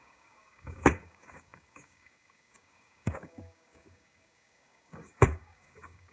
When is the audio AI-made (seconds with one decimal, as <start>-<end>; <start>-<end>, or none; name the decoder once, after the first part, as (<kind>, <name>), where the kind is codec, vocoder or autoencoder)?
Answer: 0.0-6.1 (codec, DAC)